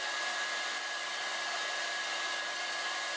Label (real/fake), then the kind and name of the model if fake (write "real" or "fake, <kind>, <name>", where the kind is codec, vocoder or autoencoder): real